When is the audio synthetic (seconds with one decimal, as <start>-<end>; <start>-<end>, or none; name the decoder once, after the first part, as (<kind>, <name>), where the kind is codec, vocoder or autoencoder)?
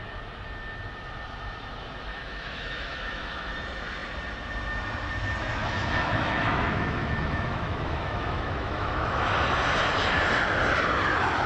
2.1-3.5 (autoencoder, DAC-VAE); 5.6-9.2